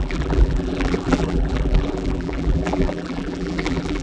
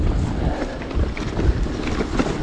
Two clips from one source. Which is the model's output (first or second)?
first